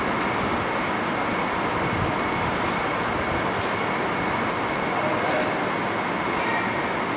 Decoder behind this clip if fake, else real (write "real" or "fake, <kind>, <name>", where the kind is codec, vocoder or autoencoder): real